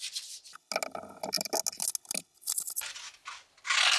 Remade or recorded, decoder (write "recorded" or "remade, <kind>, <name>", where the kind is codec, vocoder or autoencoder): recorded